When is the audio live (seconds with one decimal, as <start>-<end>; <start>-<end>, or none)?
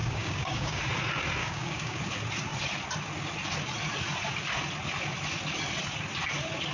0.8-1.4; 2.0-6.7